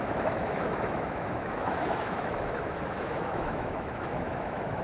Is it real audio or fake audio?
fake